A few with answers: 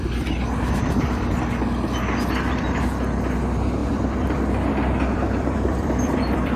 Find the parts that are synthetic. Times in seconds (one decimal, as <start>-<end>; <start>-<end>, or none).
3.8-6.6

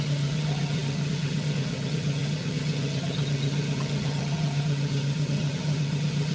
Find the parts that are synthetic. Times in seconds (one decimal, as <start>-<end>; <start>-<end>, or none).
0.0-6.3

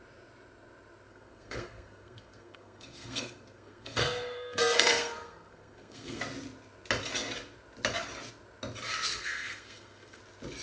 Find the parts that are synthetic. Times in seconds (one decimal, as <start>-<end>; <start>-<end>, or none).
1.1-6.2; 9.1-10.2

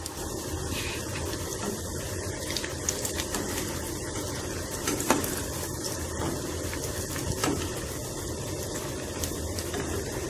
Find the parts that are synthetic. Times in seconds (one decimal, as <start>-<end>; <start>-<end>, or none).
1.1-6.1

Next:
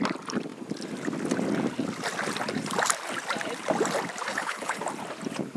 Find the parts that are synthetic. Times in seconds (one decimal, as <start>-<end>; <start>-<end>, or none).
4.3-4.8

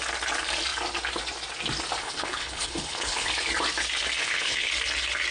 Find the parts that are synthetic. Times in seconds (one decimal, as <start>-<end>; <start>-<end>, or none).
2.0-3.3; 4.2-4.7